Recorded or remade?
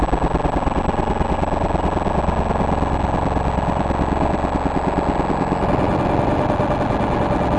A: recorded